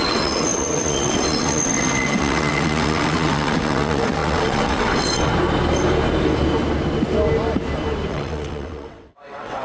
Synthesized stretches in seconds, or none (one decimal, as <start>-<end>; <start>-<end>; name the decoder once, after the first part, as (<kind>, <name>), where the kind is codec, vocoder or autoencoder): 0.0-5.3 (vocoder, WaveNeXt); 8.1-9.6